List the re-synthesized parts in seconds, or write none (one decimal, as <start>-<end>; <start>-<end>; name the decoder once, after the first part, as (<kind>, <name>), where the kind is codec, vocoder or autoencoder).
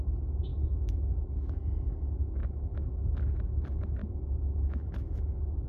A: 0.5-1.1 (autoencoder, DAC-VAE); 2.4-3.2; 4.0-5.2